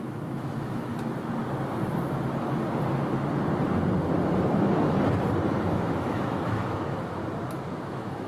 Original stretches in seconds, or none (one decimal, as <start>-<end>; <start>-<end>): 0.9-5.7; 7.2-7.8